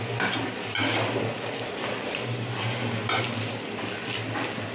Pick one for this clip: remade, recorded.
recorded